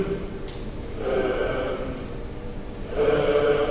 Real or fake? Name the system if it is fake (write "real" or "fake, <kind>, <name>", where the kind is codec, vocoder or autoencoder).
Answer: fake, vocoder, BigVGAN v2